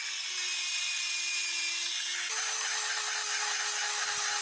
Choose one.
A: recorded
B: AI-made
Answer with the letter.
A